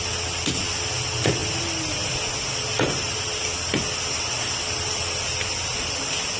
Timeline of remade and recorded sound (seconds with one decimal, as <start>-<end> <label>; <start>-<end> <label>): 0.0-6.4 recorded